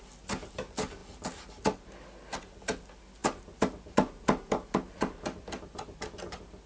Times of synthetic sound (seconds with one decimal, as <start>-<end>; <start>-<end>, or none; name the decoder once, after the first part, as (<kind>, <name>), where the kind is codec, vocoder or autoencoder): none